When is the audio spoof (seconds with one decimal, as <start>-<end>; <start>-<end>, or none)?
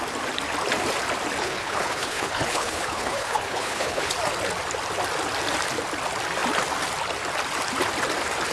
1.4-4.1